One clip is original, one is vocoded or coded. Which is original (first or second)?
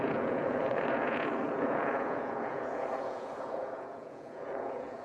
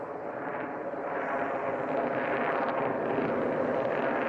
second